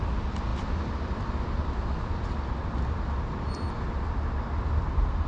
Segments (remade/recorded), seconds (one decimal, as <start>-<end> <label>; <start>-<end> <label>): 0.0-5.3 recorded